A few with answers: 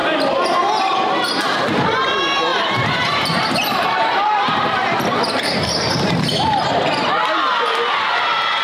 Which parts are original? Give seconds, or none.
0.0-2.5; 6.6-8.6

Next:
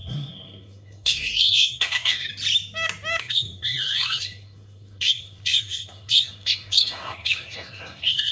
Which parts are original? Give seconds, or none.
2.3-3.2